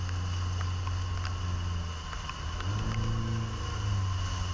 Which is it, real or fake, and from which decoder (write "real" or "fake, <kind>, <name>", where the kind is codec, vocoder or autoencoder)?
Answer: real